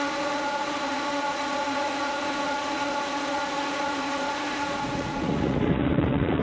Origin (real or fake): fake